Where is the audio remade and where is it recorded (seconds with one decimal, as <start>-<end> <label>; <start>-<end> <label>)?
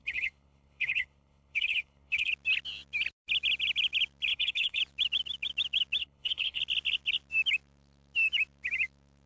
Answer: 0.0-2.3 remade; 2.3-4.3 recorded; 4.3-4.8 remade; 4.8-6.0 recorded; 6.0-6.6 remade; 6.6-9.3 recorded